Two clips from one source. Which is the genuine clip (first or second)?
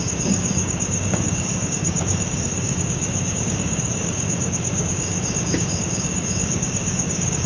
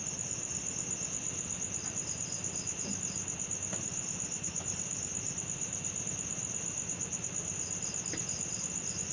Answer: second